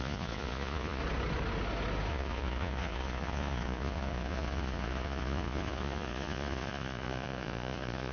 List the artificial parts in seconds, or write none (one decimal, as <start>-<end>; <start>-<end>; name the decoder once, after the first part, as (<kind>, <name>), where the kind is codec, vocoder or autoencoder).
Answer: 0.0-1.0 (vocoder, Vocos); 2.1-8.1